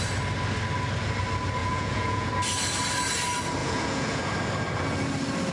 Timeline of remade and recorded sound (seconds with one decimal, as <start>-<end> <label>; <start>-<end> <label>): 0.0-1.6 recorded; 1.6-2.3 remade; 2.3-3.6 recorded; 3.6-4.2 remade; 4.2-5.5 recorded